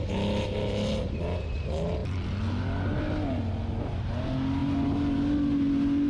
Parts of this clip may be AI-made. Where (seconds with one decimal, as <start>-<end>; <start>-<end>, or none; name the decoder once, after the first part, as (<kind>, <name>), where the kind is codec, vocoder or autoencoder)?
none